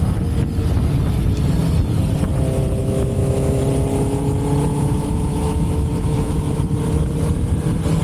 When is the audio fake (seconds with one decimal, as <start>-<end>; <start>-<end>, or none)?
2.8-3.6; 4.7-6.6